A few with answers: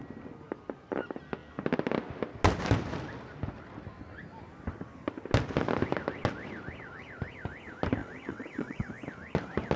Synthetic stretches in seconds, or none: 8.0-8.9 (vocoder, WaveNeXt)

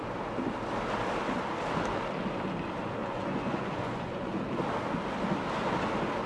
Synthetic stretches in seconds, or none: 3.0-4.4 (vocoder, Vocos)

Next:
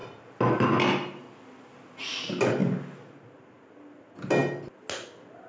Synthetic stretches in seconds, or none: none

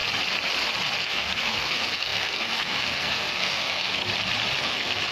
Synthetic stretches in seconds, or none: 1.0-4.0 (codec, SNAC); 4.6-5.1

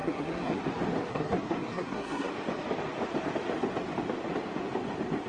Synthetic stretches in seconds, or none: 0.0-0.6 (codec, SNAC); 1.1-2.3

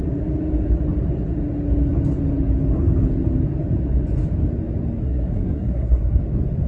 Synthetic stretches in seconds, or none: 5.0-6.2 (codec, SNAC)

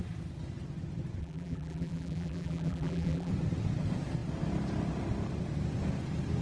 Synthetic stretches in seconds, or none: 1.2-3.3 (vocoder, BigVGAN v2)